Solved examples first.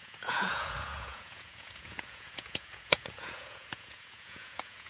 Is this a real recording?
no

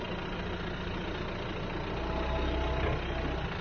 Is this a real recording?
yes